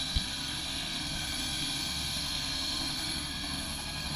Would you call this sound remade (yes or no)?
yes